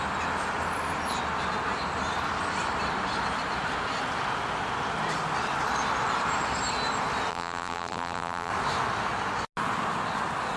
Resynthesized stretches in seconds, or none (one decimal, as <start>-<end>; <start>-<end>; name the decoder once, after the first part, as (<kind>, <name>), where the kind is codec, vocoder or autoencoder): 7.3-8.5 (vocoder, BigVGAN v2)